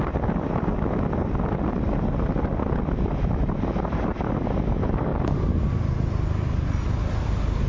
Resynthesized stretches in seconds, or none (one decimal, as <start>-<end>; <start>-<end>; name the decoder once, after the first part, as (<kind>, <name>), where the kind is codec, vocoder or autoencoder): none